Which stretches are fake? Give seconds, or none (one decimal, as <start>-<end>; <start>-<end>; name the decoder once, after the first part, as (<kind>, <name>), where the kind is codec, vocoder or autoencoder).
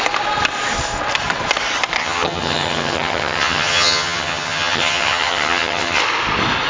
2.0-6.0 (vocoder, HiFi-GAN)